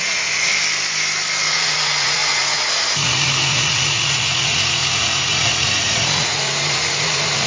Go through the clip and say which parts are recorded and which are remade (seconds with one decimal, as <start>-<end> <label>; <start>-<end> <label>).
0.0-0.5 remade; 0.5-1.5 recorded; 1.5-7.5 remade